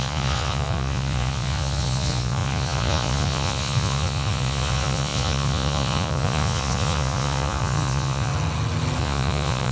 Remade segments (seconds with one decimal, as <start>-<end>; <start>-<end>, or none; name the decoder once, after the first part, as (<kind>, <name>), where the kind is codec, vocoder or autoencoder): 0.0-8.3 (vocoder, Vocos); 9.0-9.7